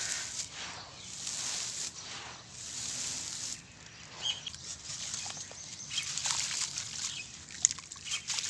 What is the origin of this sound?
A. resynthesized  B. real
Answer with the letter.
B